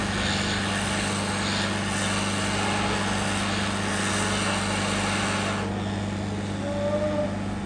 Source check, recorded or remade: recorded